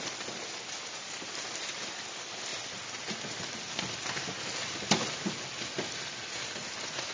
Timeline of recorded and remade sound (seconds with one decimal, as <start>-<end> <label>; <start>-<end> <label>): 0.0-7.1 recorded